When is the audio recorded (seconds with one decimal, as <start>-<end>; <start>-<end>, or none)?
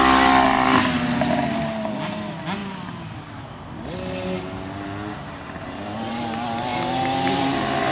0.0-7.9